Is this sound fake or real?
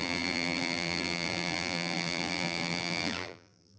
fake